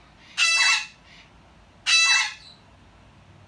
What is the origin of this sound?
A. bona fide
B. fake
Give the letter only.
A